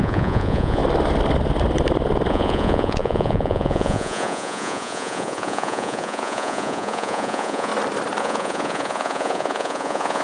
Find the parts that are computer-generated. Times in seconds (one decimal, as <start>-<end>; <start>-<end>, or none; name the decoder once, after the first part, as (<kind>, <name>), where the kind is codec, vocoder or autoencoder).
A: 0.0-0.8 (vocoder, Vocos); 2.3-7.7; 8.2-10.2